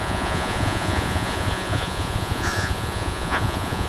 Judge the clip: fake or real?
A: fake